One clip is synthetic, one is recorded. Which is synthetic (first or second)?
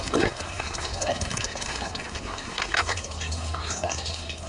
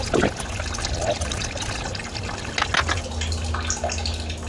first